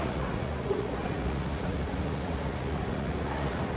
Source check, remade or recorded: remade